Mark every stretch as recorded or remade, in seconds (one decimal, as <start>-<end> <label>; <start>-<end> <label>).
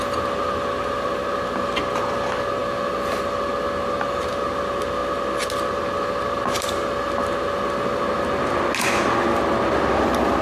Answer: 0.0-10.4 recorded